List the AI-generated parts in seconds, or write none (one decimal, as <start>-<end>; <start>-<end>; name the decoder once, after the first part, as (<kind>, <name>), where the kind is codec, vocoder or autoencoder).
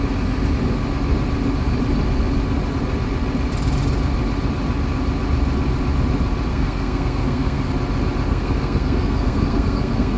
6.5-7.7 (codec, SNAC); 8.3-10.2